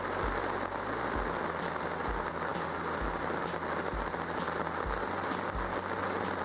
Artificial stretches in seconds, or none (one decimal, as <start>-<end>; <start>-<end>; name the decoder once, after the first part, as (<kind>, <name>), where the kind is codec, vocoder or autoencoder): none

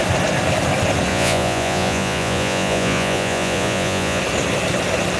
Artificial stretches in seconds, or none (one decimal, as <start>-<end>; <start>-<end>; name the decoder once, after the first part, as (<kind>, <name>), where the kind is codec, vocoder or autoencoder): 1.1-4.2 (vocoder, Vocos)

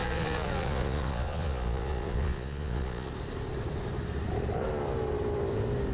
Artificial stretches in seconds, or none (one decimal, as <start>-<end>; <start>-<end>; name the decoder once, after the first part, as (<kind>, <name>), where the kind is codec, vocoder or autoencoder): 0.0-3.1 (vocoder, Vocos)